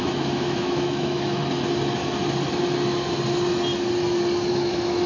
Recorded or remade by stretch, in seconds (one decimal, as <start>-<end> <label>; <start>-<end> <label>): 0.0-1.4 remade; 1.4-4.5 recorded; 4.5-5.1 remade